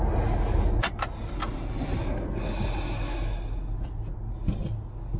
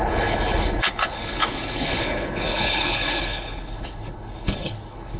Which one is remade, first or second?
second